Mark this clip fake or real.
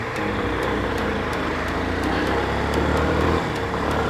fake